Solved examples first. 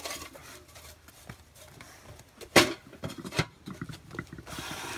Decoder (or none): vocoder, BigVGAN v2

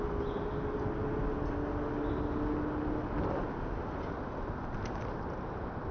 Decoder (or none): none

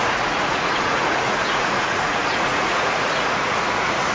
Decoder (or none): vocoder, Vocos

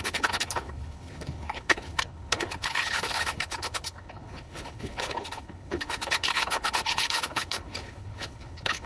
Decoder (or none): codec, HILCodec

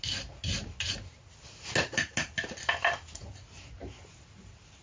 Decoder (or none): none